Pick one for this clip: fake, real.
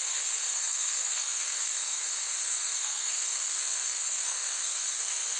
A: fake